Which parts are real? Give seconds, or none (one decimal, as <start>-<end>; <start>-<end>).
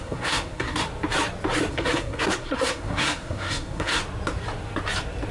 0.8-1.7; 4.0-5.3